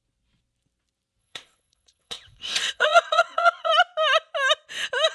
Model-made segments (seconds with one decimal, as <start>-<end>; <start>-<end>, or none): 1.2-3.7